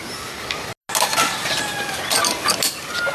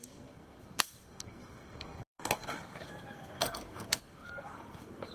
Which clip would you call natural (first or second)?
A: first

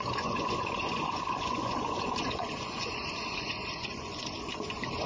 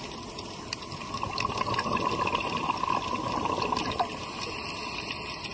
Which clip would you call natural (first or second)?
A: second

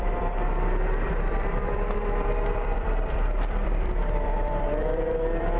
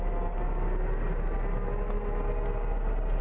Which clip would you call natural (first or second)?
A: second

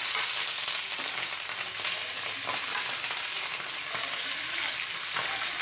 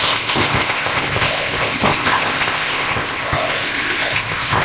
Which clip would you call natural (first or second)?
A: first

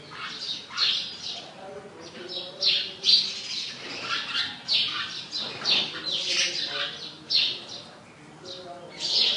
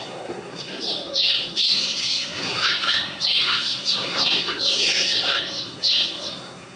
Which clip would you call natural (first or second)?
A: first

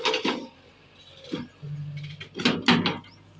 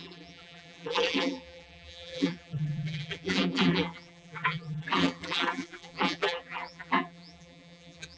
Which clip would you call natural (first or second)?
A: first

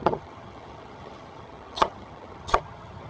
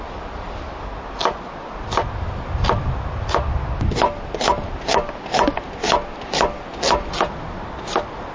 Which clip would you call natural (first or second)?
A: second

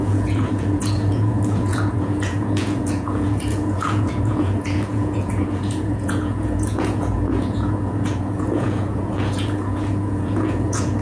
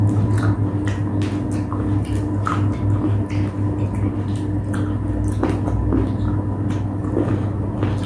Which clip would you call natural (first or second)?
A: second